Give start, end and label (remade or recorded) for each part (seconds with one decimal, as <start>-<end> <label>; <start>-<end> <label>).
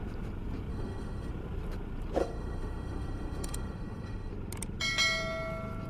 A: 0.0-0.7 recorded; 0.7-1.3 remade; 1.3-2.2 recorded; 2.2-4.3 remade; 4.3-5.9 recorded